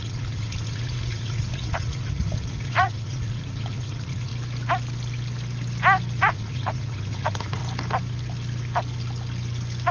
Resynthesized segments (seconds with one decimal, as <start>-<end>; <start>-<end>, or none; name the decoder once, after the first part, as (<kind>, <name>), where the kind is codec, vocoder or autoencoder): 0.0-4.3 (vocoder, Vocos); 6.2-7.6